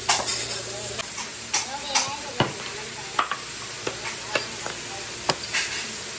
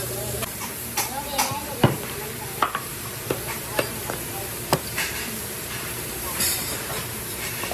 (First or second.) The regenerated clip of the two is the second